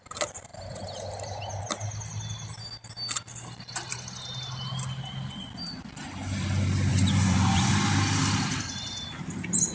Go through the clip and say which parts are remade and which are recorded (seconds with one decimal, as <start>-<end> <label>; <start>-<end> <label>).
0.0-6.9 recorded; 6.9-7.7 remade; 7.7-9.7 recorded